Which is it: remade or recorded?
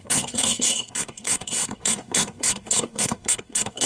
remade